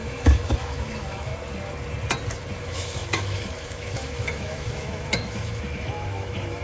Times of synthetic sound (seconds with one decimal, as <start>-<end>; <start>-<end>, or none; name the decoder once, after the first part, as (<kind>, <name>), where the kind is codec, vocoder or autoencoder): 0.0-1.3 (autoencoder, DAC-VAE); 2.6-6.6